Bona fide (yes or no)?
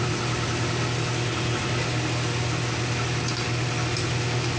yes